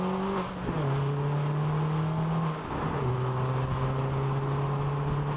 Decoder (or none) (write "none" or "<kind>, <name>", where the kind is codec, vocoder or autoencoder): none